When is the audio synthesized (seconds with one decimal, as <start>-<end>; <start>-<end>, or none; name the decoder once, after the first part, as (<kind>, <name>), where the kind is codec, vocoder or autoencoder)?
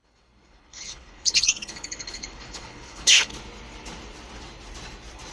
0.0-3.3 (codec, HILCodec)